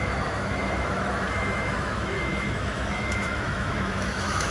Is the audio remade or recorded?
remade